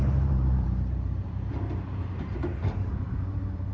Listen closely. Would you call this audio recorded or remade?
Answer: remade